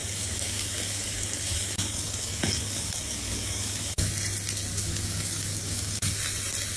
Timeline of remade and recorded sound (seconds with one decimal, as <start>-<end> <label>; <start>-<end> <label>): 0.0-4.1 remade; 4.1-4.7 recorded; 4.7-6.2 remade; 6.2-6.8 recorded

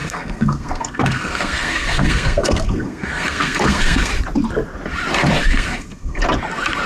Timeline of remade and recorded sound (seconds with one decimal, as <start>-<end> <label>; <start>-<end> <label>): 0.0-4.1 remade; 4.1-5.5 recorded; 5.5-6.2 remade; 6.2-6.9 recorded